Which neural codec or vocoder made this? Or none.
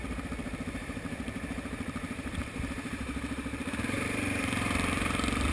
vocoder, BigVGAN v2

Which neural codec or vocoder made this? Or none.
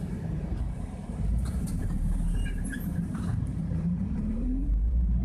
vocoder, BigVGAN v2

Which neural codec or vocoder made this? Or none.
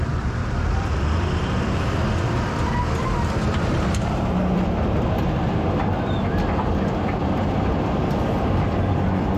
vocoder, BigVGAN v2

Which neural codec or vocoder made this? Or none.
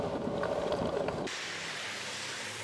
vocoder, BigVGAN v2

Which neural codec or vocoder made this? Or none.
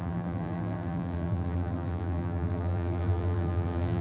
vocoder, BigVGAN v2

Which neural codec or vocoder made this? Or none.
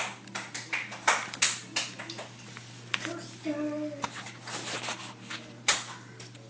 vocoder, BigVGAN v2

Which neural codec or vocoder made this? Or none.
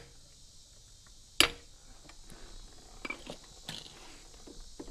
none